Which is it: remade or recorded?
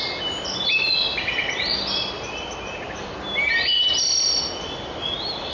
recorded